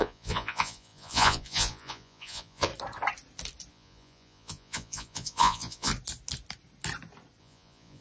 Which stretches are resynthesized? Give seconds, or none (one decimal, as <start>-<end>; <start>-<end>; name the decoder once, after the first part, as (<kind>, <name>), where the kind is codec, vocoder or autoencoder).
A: 0.0-2.7 (vocoder, Vocos); 3.7-5.9; 7.4-8.0